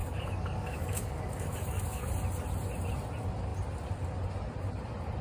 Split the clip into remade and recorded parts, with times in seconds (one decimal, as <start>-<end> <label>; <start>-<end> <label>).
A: 0.0-2.1 remade; 2.1-5.2 recorded